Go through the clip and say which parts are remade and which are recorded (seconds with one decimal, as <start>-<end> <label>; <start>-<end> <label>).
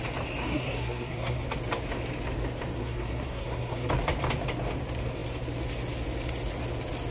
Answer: 0.0-0.4 recorded; 0.4-1.4 remade; 1.4-2.8 recorded; 2.8-3.9 remade; 3.9-7.1 recorded